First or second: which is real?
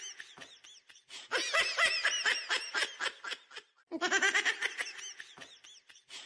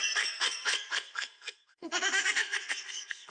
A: first